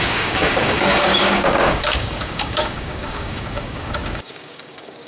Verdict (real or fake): fake